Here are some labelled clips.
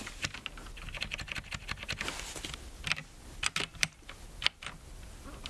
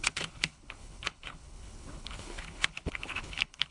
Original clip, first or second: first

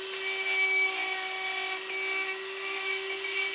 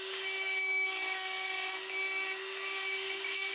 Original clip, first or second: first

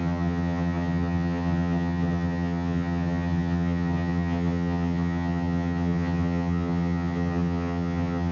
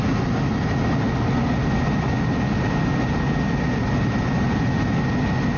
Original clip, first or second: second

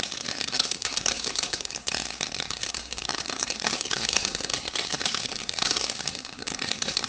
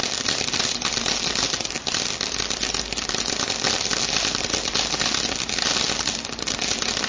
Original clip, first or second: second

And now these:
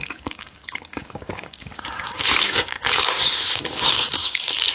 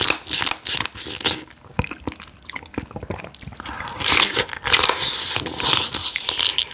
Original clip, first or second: second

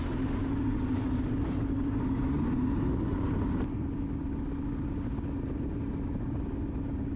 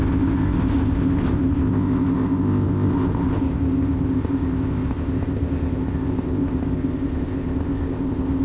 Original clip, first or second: first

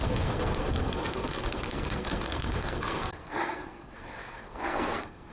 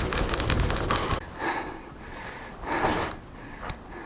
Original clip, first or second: second